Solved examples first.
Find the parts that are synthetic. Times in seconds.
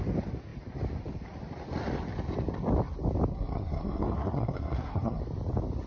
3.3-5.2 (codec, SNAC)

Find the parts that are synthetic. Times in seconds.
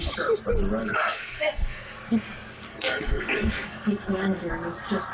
0.8-1.9 (codec, SNAC); 2.7-4.5